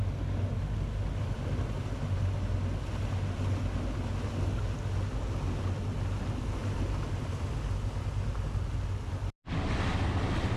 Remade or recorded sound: recorded